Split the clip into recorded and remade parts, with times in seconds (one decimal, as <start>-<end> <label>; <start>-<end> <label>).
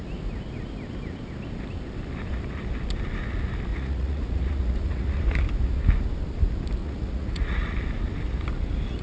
0.0-3.7 recorded; 3.7-5.2 remade; 5.2-6.8 recorded; 6.8-7.7 remade; 7.7-9.0 recorded